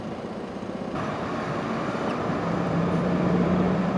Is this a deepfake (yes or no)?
yes